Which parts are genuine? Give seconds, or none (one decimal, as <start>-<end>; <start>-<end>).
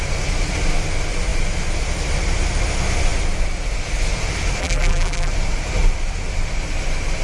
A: 0.0-4.6; 5.3-7.2